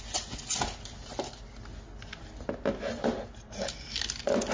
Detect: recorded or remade recorded